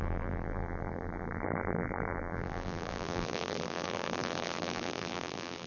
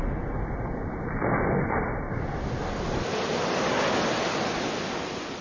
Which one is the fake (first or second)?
first